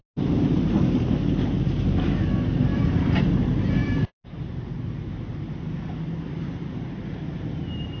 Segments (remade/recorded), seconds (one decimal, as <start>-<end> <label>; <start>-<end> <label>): 0.0-2.7 recorded; 2.7-3.2 remade; 3.2-3.8 recorded; 3.8-4.9 remade; 4.9-8.0 recorded